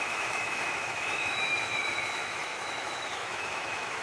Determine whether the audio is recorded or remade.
remade